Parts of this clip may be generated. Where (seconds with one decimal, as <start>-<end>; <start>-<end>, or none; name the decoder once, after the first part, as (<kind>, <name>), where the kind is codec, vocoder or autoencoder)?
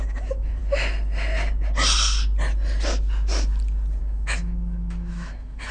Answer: 0.0-0.6 (autoencoder, DAC-VAE); 4.0-5.7